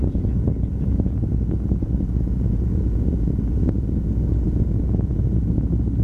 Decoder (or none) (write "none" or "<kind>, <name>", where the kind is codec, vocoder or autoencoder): vocoder, Vocos